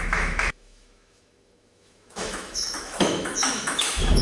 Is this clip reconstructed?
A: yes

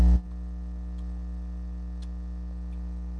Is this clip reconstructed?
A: no